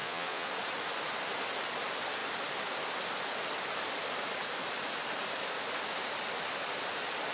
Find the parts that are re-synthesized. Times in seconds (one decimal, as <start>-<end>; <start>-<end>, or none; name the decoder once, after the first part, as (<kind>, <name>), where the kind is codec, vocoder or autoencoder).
0.0-0.5 (vocoder, Vocos)